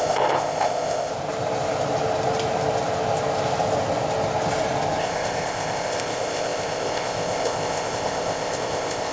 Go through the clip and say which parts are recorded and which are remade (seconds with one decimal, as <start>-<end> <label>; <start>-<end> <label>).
0.0-1.1 remade; 1.1-5.0 recorded; 5.0-9.1 remade